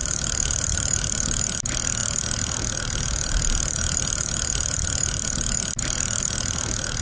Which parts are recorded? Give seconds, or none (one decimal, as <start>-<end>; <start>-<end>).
1.4-7.0

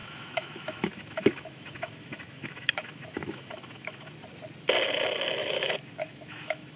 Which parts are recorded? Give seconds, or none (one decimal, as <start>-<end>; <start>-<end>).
4.1-5.4

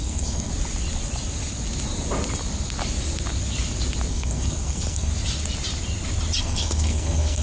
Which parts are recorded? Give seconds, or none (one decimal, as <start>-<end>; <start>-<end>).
0.5-4.1; 5.1-6.4